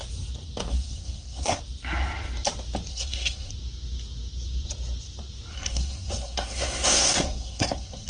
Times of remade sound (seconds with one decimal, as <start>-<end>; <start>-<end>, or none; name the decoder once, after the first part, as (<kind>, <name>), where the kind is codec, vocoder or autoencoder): 0.7-1.6 (codec, SNAC); 2.9-3.5; 5.5-8.1